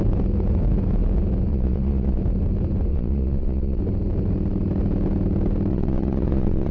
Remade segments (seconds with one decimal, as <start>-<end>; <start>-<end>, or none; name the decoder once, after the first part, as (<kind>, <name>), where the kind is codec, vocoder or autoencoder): 1.5-2.2 (vocoder, Vocos); 2.9-3.8; 5.7-6.7